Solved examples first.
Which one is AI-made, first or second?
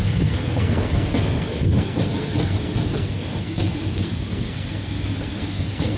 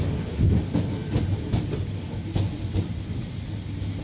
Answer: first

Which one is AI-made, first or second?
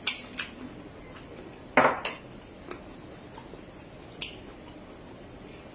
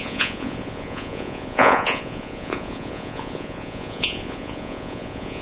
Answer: second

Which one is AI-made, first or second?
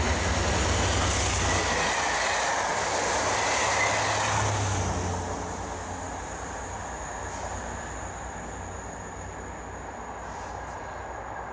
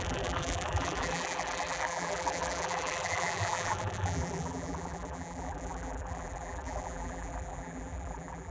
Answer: second